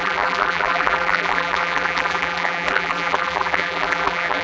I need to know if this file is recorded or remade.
remade